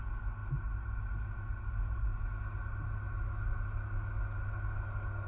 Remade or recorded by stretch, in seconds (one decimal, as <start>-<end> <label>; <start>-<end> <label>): 0.0-5.3 recorded